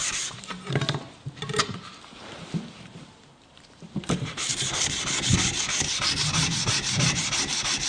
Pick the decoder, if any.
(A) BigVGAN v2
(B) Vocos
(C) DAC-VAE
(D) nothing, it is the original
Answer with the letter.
A